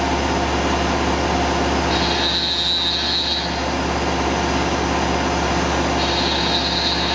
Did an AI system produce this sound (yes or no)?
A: no